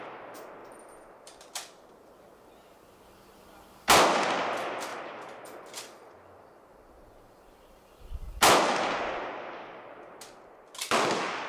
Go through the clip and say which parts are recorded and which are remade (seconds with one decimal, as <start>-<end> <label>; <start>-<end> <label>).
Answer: 0.0-0.6 recorded; 0.6-2.1 remade; 2.1-4.9 recorded; 4.9-9.1 remade; 9.1-11.5 recorded